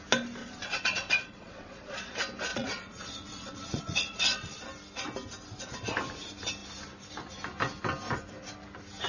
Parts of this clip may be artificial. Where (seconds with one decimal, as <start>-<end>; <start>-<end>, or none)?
0.4-2.1; 2.5-4.6